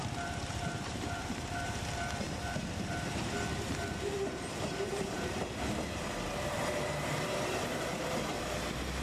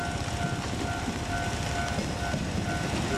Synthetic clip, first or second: first